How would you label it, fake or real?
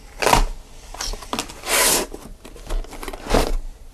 real